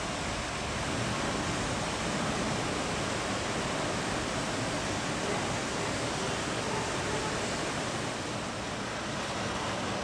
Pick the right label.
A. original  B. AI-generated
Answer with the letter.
A